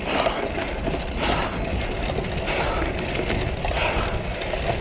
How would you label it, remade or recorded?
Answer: recorded